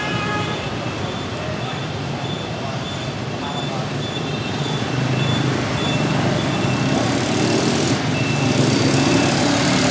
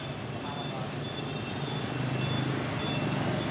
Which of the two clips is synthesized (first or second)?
first